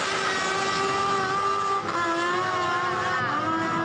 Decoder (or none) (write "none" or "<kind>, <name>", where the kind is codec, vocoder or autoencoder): none